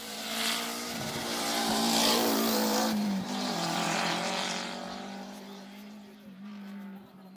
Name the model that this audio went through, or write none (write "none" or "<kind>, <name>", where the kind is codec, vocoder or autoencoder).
vocoder, BigVGAN v2